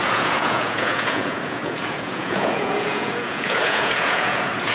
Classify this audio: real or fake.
fake